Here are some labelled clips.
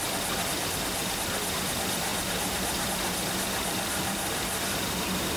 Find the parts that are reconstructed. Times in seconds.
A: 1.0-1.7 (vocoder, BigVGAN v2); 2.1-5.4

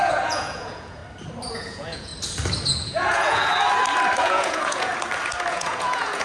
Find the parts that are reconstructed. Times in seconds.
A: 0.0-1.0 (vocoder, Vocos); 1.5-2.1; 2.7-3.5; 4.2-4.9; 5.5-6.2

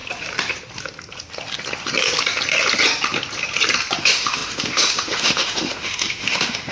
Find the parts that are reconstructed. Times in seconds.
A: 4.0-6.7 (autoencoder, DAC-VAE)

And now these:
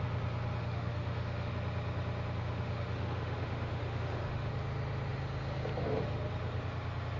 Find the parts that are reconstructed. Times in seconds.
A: 0.6-1.5 (autoencoder, DAC-VAE); 2.4-4.5

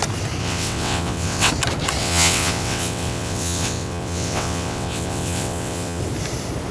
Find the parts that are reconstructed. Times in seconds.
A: 0.4-1.5 (vocoder, WaveNeXt); 2.0-6.0

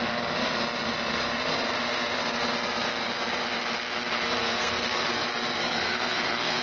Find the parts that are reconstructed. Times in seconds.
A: 4.1-5.1 (codec, SNAC); 5.6-6.6

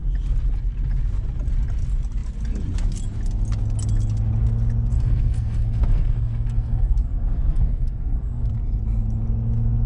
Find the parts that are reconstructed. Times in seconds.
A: 4.9-8.5 (codec, SNAC)